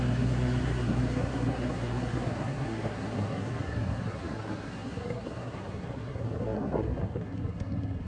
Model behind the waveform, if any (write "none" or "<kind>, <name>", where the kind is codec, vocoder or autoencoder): codec, SNAC